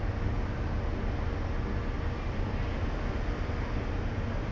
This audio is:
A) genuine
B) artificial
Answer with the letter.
A